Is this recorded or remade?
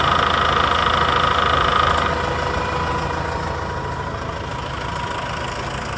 recorded